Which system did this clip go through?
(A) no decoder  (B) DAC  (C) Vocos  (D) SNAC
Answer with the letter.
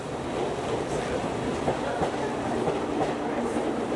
A